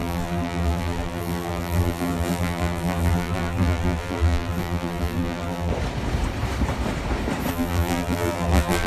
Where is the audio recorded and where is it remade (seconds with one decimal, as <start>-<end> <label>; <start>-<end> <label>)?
0.0-5.7 remade; 5.7-7.5 recorded; 7.5-8.9 remade